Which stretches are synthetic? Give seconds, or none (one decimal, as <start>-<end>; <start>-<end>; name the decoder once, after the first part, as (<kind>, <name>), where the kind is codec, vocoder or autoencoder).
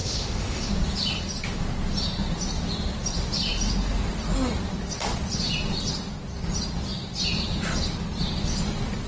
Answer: 0.0-0.7 (autoencoder, DAC-VAE)